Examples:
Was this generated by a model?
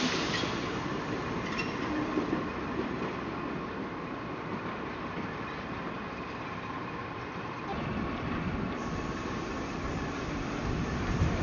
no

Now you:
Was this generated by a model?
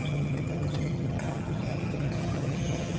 yes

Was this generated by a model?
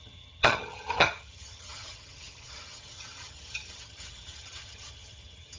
yes